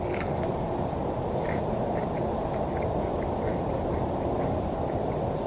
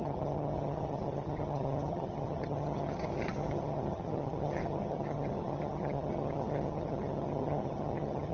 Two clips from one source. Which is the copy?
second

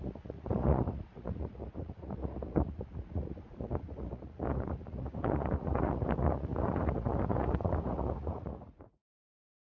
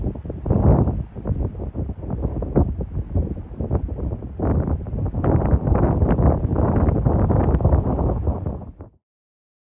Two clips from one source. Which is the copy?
first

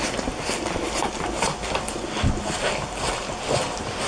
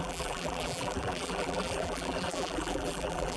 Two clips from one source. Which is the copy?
second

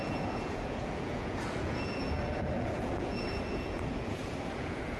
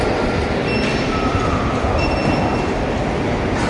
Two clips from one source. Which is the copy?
first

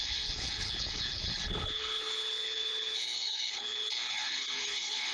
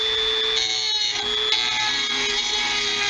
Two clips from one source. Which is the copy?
first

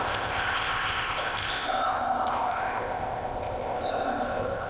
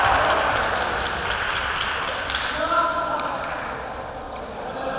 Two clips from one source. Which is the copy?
first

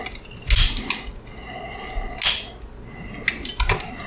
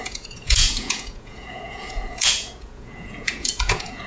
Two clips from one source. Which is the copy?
second